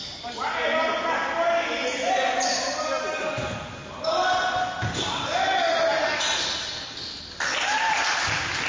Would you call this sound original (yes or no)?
yes